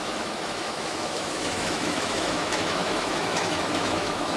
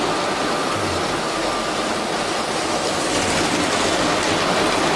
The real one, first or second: second